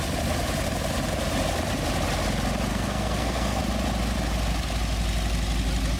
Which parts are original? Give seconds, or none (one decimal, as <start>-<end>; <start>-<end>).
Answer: 0.0-2.7; 3.6-6.0